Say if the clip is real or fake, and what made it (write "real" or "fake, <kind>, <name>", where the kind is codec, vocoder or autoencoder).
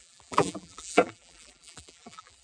fake, vocoder, BigVGAN v2